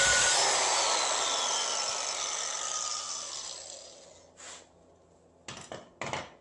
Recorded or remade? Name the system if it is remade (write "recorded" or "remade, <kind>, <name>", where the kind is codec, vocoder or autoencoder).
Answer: recorded